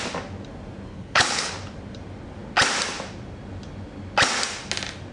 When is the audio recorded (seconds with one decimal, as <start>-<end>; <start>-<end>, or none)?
0.0-0.9; 1.5-5.1